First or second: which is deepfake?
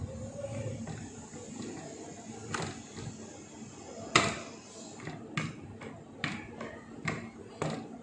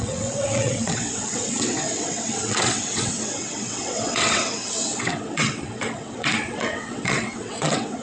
second